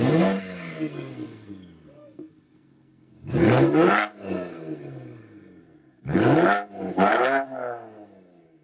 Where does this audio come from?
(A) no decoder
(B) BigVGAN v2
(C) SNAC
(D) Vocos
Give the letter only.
C